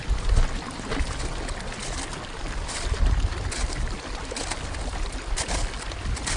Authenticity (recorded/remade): recorded